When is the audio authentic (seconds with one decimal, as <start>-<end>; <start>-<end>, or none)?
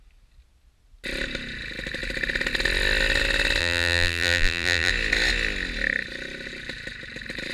0.0-3.6; 4.9-7.5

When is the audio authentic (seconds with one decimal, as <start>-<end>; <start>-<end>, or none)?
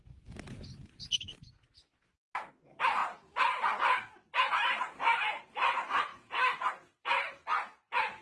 0.0-2.5; 3.0-4.5; 6.1-6.7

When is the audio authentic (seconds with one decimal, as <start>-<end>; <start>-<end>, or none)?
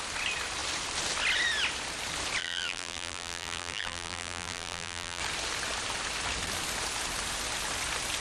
0.0-2.4; 5.2-8.2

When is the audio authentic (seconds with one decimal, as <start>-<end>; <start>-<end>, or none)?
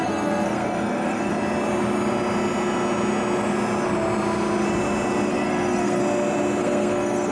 1.3-5.3; 6.0-6.6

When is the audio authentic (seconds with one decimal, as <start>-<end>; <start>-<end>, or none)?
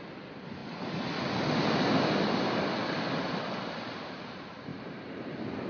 0.0-4.7; 5.3-5.7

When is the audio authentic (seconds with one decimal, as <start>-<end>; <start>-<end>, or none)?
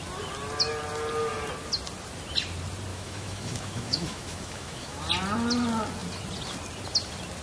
0.0-2.9; 5.0-7.4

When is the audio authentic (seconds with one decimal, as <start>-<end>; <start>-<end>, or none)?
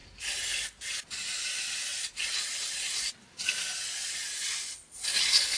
0.0-5.6